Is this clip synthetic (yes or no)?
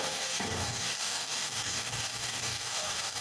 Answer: yes